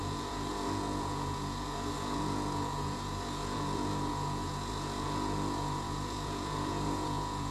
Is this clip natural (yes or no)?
no